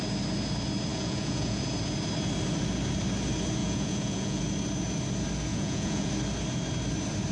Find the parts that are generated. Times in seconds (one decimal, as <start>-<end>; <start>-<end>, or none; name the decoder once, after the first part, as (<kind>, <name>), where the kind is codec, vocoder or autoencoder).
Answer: 0.9-1.6 (vocoder, Vocos); 3.6-4.4; 5.5-6.1